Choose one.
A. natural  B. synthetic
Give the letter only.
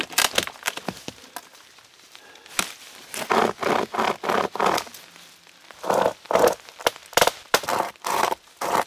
A